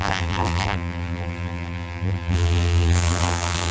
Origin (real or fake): fake